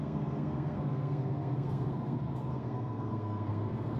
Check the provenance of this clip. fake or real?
fake